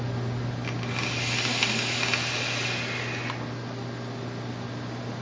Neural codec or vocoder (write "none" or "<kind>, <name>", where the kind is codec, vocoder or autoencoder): none